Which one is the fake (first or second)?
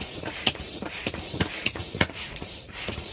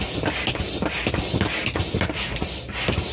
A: first